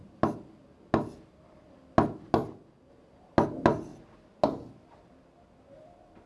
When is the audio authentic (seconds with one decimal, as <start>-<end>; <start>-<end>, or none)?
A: 0.0-6.3